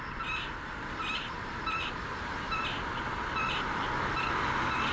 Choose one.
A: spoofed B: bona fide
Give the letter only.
B